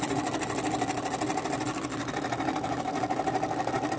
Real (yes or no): yes